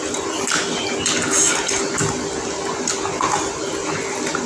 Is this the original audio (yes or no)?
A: yes